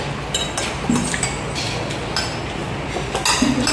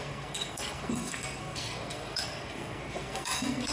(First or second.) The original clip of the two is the first